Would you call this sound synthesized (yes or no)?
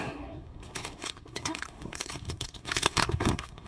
yes